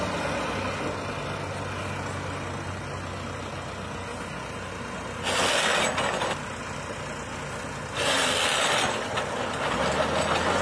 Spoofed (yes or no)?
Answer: no